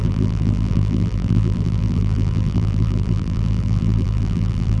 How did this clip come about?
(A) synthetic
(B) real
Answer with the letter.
A